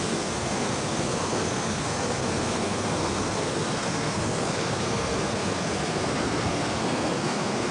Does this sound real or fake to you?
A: fake